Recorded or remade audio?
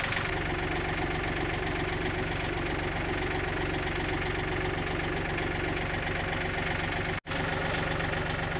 recorded